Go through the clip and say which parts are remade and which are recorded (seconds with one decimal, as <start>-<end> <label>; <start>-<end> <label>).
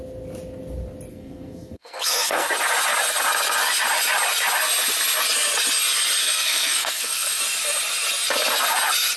0.0-1.1 recorded; 1.1-2.5 remade; 2.5-6.2 recorded; 6.2-7.4 remade; 7.4-9.2 recorded